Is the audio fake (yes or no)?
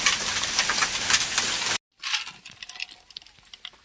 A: no